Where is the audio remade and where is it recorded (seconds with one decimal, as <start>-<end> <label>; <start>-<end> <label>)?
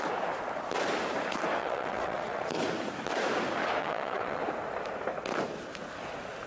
0.0-1.6 recorded; 1.6-2.5 remade; 2.5-3.8 recorded; 3.8-4.4 remade; 4.4-6.5 recorded